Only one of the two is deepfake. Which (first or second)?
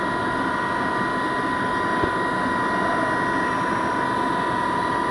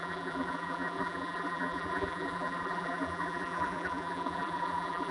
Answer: second